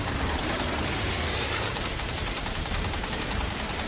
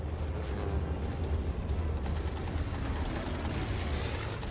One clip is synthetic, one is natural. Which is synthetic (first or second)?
first